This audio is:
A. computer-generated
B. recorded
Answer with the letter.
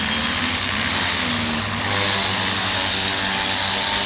B